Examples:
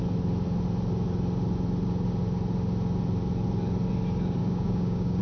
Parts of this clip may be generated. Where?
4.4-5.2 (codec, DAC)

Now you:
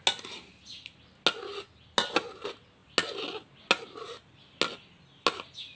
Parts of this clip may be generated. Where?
none

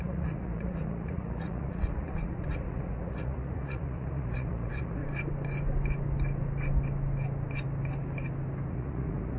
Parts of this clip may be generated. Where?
0.0-5.0 (vocoder, Vocos); 8.7-9.4

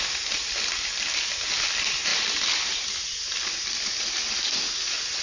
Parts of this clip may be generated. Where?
none

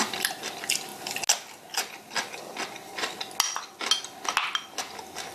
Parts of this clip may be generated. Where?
none

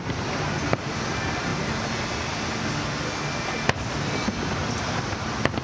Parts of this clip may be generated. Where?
none

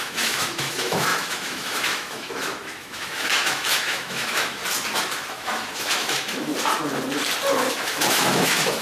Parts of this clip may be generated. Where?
0.0-4.6 (autoencoder, DAC-VAE); 5.3-6.5; 7.7-8.8

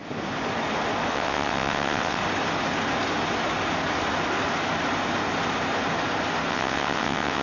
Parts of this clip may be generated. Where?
1.1-2.2 (vocoder, WaveNeXt); 6.5-7.4